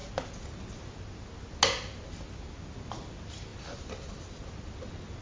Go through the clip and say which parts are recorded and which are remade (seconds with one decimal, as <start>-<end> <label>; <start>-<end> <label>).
0.0-5.2 recorded